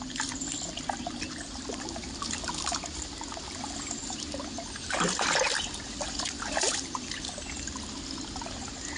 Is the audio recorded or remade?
recorded